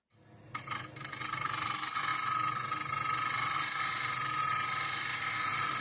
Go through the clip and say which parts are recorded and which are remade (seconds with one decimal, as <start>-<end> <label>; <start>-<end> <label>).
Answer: 0.0-5.8 recorded